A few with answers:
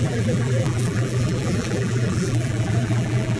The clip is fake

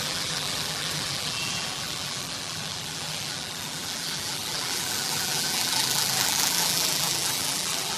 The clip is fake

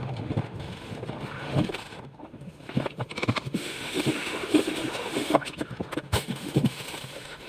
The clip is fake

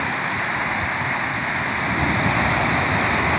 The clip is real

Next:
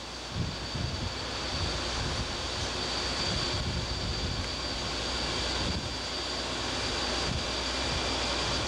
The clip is real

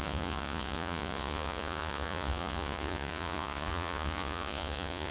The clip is fake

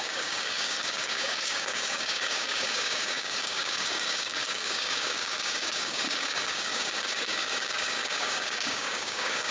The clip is fake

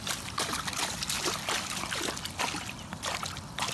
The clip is real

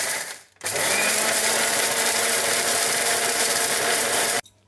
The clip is fake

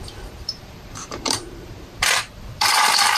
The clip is fake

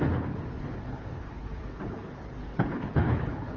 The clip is fake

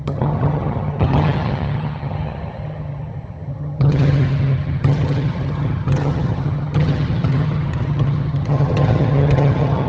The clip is fake